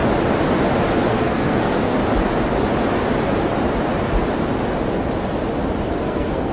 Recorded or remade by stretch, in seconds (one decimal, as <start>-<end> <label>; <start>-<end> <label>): 0.0-1.1 recorded; 1.1-2.0 remade; 2.0-5.9 recorded; 5.9-6.5 remade